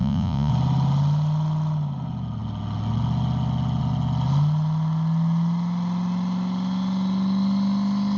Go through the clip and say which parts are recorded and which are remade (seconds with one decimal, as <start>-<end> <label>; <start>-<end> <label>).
0.0-0.5 remade; 0.5-8.2 recorded